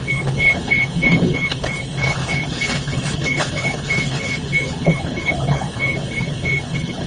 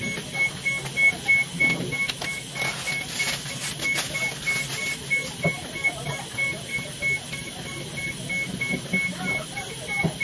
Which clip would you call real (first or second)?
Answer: second